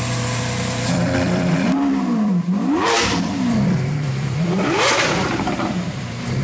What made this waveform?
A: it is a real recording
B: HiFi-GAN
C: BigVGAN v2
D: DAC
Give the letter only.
C